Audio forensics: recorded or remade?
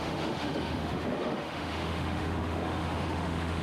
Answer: remade